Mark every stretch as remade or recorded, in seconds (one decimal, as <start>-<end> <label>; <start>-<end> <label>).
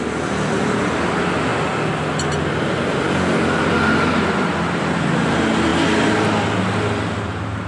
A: 0.0-7.7 recorded